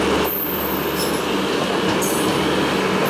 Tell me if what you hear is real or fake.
real